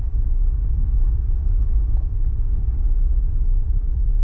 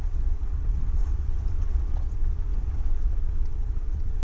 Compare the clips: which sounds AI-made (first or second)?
second